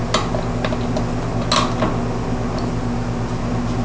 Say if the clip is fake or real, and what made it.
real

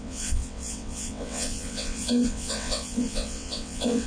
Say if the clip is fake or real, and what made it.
fake, vocoder, WaveNeXt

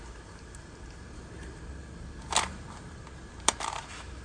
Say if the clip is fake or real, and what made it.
real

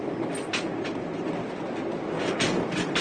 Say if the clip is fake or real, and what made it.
real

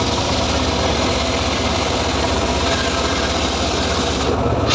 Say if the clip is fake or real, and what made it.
real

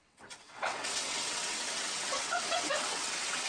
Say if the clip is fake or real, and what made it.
fake, vocoder, WaveNeXt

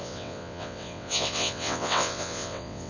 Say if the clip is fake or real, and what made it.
fake, vocoder, WaveNeXt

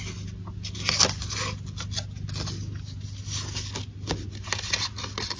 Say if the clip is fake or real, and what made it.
real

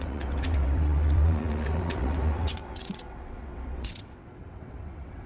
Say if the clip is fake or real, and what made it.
fake, vocoder, WaveNeXt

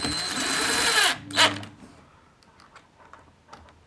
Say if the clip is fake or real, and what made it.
real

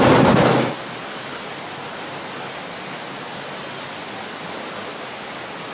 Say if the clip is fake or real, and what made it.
real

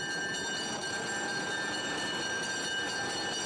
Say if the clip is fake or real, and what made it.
real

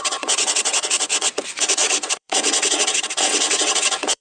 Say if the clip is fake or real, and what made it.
fake, vocoder, WaveNeXt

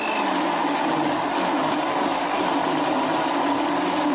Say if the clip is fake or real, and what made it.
real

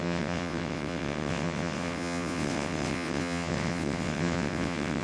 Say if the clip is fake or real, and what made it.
fake, vocoder, WaveNeXt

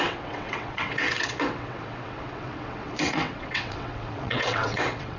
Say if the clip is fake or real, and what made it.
fake, vocoder, WaveNeXt